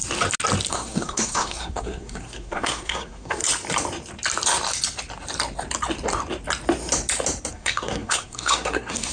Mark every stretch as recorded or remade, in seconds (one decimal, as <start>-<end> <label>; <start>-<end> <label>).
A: 0.0-0.7 recorded; 0.7-3.4 remade; 3.4-7.5 recorded; 7.5-9.1 remade